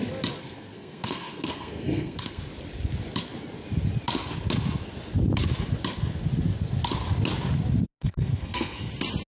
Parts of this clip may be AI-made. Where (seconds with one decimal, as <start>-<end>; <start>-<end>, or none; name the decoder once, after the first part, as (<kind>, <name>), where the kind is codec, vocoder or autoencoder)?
0.4-2.4 (codec, SNAC); 7.9-8.9